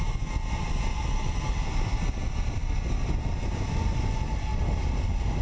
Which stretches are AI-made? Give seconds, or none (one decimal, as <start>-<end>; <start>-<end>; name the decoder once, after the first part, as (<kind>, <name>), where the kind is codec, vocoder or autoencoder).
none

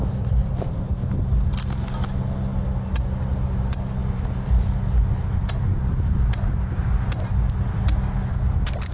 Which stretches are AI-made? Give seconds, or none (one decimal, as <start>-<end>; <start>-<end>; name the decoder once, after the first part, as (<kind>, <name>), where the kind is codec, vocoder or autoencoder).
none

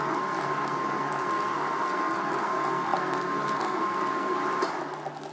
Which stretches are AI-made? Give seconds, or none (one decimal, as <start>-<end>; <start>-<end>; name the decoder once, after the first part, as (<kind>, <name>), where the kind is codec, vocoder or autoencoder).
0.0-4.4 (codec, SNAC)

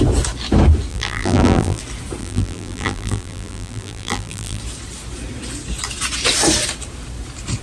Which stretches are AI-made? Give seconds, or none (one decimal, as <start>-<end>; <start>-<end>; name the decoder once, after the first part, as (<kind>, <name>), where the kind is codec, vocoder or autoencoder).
0.9-1.8 (vocoder, BigVGAN v2); 2.2-4.6